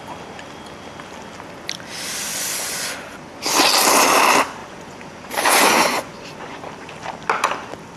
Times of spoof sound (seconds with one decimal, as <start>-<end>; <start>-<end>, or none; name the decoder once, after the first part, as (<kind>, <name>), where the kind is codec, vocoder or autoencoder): 2.3-3.4 (vocoder, Vocos); 4.6-6.7